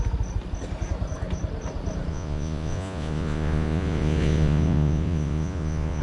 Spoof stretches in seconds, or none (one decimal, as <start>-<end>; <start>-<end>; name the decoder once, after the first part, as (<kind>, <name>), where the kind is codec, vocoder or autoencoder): 2.1-6.0 (vocoder, Vocos)